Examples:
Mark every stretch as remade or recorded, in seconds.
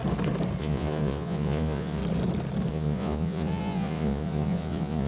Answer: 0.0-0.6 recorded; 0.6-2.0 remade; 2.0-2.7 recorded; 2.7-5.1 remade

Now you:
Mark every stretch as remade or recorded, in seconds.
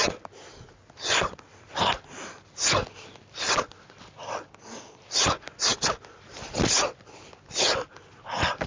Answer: 0.0-8.7 recorded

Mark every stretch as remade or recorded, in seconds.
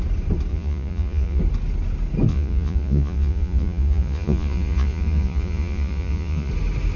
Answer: 0.0-0.5 recorded; 0.5-1.4 remade; 1.4-2.3 recorded; 2.3-6.5 remade; 6.5-7.0 recorded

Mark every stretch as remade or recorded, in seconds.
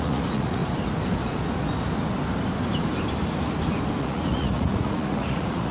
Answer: 0.0-0.6 remade; 0.6-4.0 recorded; 4.0-5.7 remade